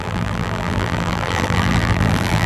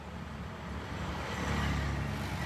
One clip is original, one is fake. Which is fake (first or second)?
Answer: first